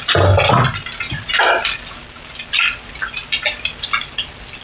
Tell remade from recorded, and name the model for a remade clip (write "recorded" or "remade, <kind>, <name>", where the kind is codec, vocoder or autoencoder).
recorded